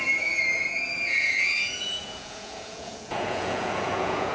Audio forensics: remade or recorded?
remade